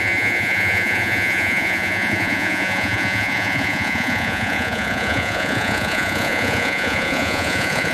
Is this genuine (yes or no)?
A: no